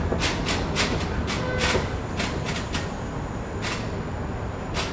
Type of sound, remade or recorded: recorded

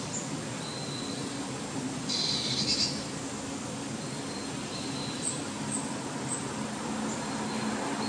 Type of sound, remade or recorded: recorded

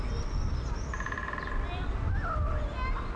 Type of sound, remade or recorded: recorded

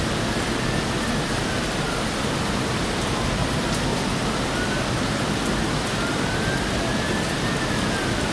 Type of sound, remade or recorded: recorded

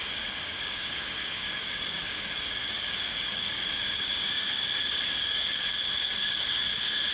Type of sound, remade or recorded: remade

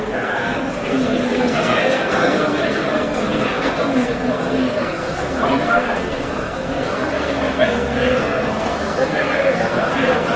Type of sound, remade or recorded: remade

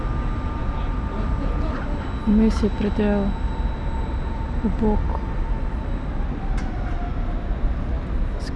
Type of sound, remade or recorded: recorded